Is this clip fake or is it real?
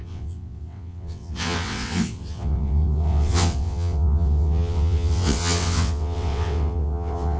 fake